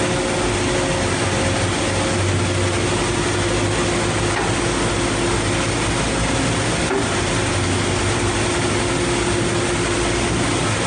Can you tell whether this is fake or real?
real